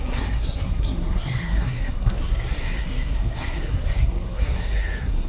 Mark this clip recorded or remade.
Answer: remade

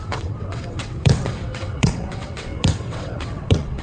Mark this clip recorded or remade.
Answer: remade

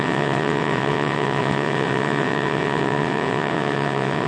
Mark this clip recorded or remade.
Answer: remade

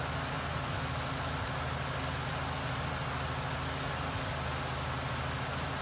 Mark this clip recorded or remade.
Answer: recorded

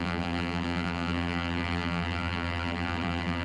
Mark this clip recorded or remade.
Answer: remade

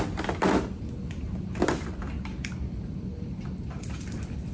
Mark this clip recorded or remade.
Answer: recorded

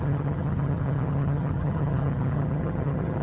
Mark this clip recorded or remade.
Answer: remade